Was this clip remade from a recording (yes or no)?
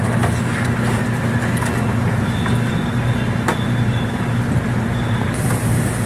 no